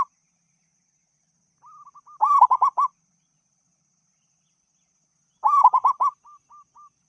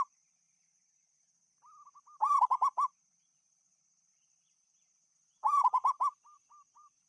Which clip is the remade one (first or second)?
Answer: second